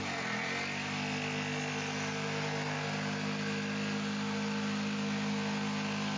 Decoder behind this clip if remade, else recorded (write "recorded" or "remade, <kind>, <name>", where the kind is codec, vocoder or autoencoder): recorded